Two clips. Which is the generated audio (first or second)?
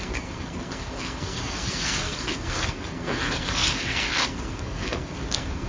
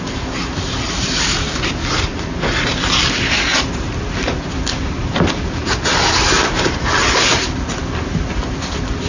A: first